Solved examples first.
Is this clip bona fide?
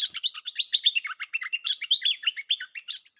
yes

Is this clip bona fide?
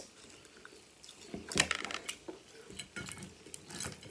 yes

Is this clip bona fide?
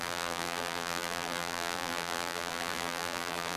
no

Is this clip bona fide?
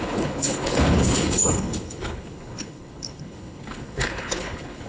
no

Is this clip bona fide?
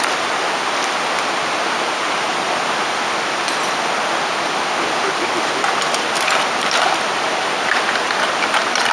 yes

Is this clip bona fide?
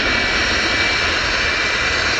yes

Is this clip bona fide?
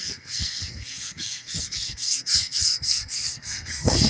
no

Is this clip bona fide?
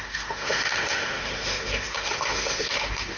no